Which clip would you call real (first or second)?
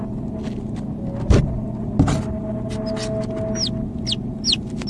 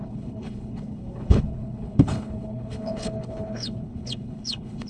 first